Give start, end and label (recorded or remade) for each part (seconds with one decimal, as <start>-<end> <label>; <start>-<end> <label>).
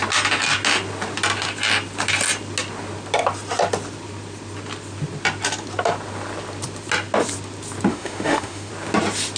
0.0-7.9 recorded; 7.9-8.7 remade; 8.7-9.4 recorded